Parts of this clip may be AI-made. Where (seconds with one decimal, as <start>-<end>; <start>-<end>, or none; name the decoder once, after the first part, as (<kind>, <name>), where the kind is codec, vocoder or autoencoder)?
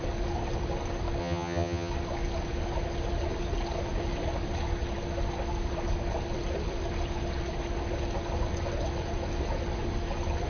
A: 1.2-1.9 (vocoder, HiFi-GAN)